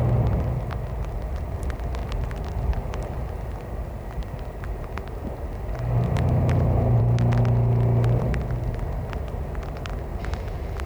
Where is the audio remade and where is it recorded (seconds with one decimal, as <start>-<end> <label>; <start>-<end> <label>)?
0.0-10.9 recorded